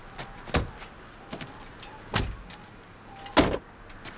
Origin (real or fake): real